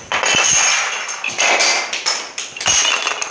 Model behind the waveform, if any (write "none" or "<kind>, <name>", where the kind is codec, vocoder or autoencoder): none